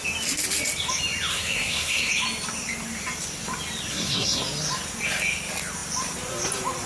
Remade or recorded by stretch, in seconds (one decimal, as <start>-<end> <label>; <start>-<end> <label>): 0.0-1.3 recorded; 1.3-2.1 remade; 2.1-3.9 recorded; 3.9-4.4 remade; 4.4-6.9 recorded